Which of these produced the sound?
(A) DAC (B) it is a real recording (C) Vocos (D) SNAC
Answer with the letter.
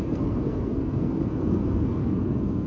D